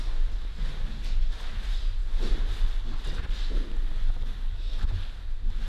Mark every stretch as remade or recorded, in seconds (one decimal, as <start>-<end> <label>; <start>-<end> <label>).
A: 0.0-5.7 recorded